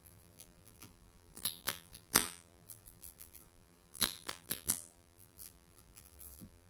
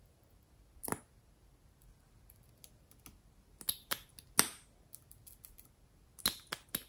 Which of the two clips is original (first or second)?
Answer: second